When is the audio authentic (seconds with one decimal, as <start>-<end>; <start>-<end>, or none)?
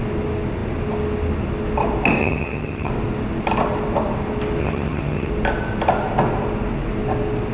0.0-2.2; 2.9-4.6; 5.3-7.5